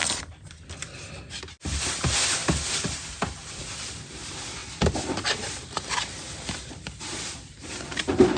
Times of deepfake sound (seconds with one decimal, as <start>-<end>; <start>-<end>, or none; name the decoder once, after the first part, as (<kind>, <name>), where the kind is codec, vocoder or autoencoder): 0.0-1.3 (vocoder, BigVGAN v2); 2.4-3.6; 4.6-7.0